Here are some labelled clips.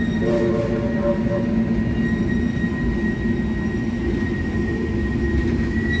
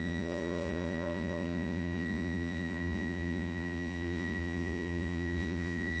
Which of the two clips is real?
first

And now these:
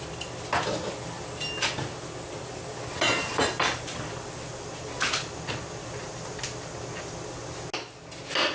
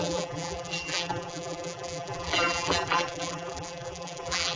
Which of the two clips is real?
first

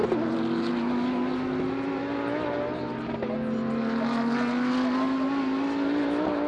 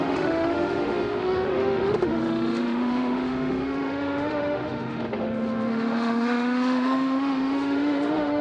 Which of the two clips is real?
first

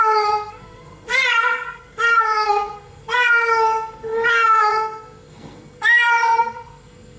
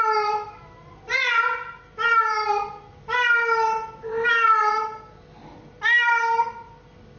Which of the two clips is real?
second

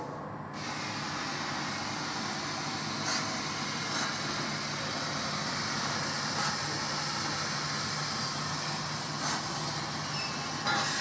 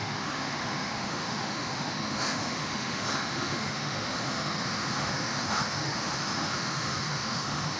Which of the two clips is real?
first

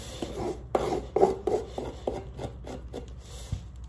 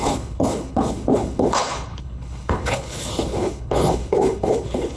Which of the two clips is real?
first